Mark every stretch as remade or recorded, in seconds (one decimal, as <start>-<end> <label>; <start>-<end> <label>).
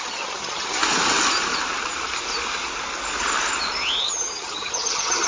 0.0-0.8 remade; 0.8-4.0 recorded; 4.0-5.3 remade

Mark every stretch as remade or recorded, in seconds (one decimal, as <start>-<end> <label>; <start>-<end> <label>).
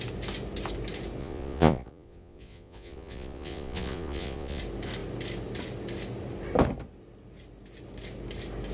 0.0-1.2 recorded; 1.2-4.6 remade; 4.6-8.7 recorded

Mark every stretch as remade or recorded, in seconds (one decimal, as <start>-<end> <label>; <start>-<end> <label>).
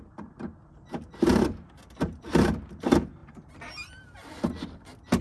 0.0-5.2 recorded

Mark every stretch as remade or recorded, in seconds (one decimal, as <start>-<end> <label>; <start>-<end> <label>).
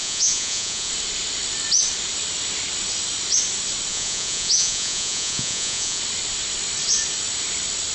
0.0-0.9 remade; 0.9-3.9 recorded; 3.9-6.0 remade; 6.0-7.9 recorded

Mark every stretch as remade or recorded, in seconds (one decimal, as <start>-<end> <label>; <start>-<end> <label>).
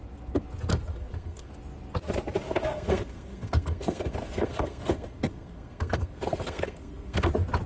0.0-0.7 recorded; 0.7-1.5 remade; 1.5-2.7 recorded; 2.7-7.3 remade; 7.3-7.7 recorded